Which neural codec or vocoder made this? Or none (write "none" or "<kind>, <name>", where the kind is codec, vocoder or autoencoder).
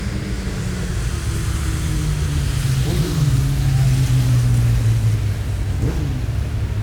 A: none